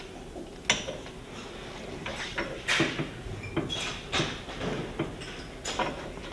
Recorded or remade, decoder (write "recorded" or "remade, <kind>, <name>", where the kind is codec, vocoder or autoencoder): recorded